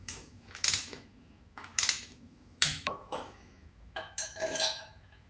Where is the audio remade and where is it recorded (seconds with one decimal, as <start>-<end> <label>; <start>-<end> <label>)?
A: 0.0-5.3 remade